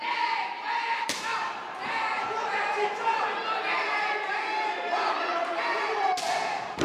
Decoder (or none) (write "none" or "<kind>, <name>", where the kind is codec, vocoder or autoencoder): vocoder, BigVGAN v2